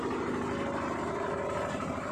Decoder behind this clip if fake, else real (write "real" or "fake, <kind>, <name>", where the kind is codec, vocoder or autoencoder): real